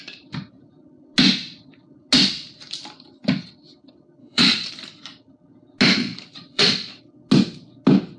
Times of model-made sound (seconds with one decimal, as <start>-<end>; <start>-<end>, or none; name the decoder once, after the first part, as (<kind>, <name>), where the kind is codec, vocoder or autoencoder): 4.2-4.7 (vocoder, Vocos); 6.0-7.0